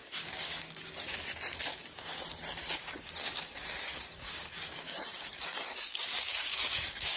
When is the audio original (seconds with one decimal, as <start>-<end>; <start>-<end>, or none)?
0.9-1.7; 2.2-2.7